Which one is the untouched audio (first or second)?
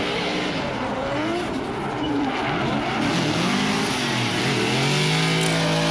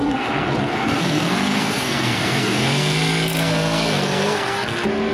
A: first